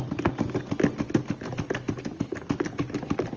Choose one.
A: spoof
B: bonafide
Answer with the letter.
B